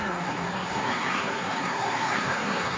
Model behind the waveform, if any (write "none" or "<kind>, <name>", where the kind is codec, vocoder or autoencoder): codec, SNAC